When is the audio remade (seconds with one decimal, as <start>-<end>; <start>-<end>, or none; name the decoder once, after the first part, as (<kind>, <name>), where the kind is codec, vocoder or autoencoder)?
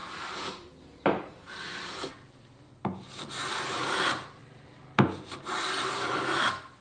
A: 0.0-2.1 (vocoder, BigVGAN v2); 3.4-4.4; 5.4-6.8